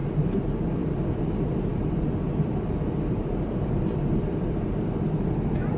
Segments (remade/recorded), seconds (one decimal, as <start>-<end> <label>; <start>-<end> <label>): 0.0-5.8 remade